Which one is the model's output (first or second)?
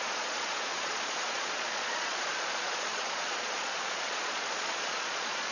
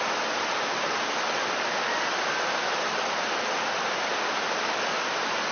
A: first